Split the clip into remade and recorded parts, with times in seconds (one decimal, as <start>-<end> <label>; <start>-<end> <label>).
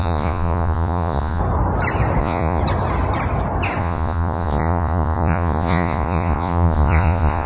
0.0-1.4 remade; 1.4-2.2 recorded; 2.2-2.6 remade; 2.6-3.8 recorded; 3.8-7.5 remade